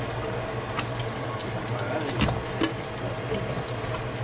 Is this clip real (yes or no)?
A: yes